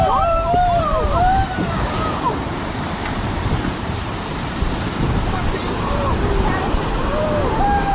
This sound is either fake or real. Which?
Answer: fake